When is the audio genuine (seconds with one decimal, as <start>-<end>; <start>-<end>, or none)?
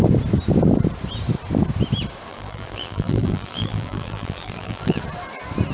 0.0-2.3; 5.0-5.7